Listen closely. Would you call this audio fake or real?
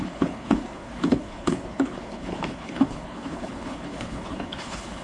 fake